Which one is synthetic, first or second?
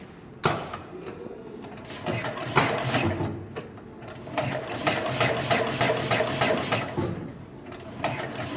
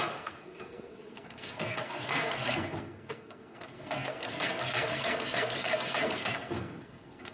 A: second